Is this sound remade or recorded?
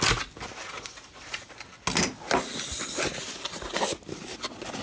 recorded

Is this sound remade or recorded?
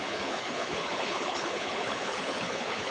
remade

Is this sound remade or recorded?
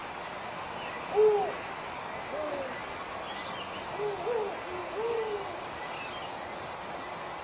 recorded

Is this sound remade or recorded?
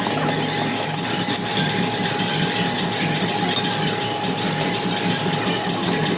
recorded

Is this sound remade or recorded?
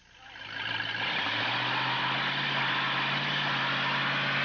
recorded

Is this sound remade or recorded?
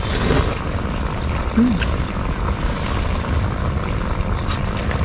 recorded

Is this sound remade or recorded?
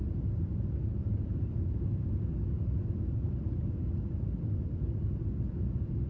remade